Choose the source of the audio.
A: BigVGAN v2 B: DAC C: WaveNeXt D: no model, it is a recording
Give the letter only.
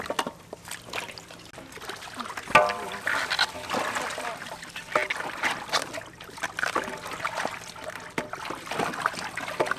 D